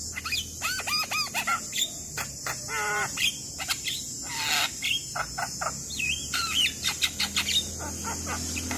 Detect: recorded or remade recorded